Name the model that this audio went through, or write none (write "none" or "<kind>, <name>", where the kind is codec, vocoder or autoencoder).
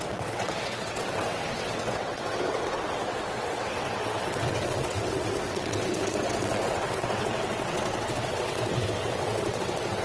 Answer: vocoder, WaveNeXt